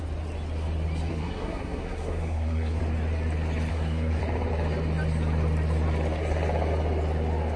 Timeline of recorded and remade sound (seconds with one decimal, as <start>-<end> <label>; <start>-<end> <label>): 0.0-1.1 recorded; 1.1-2.8 remade; 2.8-3.7 recorded; 3.7-4.2 remade; 4.2-7.6 recorded